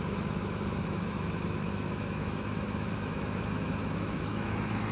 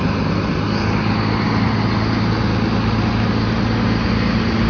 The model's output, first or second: first